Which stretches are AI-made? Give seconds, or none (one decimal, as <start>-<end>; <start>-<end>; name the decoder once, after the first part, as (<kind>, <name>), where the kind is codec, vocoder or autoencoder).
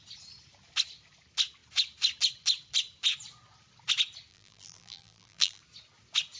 4.3-5.6 (vocoder, BigVGAN v2)